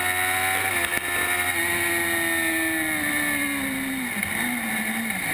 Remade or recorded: recorded